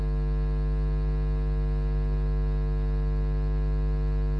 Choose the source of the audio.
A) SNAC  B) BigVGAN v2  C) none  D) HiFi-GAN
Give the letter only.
C